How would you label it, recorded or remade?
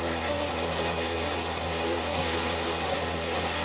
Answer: remade